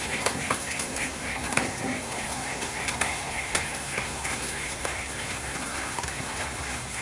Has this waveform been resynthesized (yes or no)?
yes